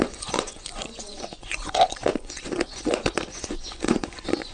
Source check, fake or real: fake